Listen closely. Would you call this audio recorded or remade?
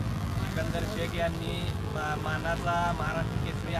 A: remade